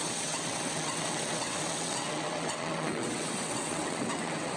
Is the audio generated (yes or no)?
yes